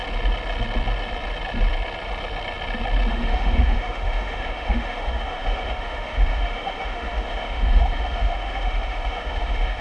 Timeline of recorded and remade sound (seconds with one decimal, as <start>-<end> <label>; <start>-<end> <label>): 0.0-3.1 recorded; 3.1-9.8 remade